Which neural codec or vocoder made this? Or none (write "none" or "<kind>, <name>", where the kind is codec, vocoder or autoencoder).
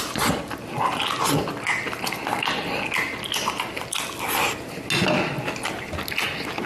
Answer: none